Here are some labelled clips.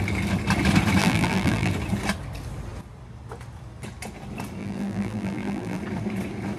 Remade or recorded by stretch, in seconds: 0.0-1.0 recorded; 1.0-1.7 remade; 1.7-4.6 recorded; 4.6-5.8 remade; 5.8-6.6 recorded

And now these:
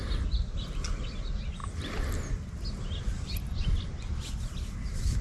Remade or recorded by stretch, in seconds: 0.0-5.2 recorded

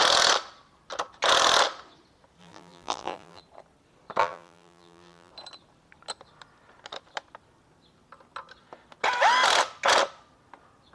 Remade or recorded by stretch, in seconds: 0.0-2.4 recorded; 2.4-3.4 remade; 3.4-4.2 recorded; 4.2-5.3 remade; 5.3-10.9 recorded

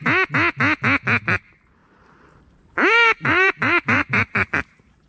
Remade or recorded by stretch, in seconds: 0.0-1.8 recorded; 1.8-5.1 remade